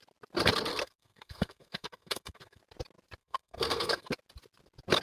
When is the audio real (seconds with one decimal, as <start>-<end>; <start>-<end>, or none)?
0.0-0.7; 2.6-3.2; 4.1-5.0